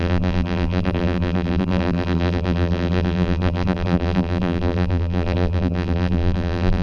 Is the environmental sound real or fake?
fake